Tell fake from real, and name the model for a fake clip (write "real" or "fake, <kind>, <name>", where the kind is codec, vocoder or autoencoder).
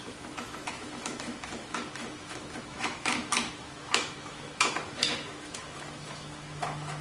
fake, autoencoder, DAC-VAE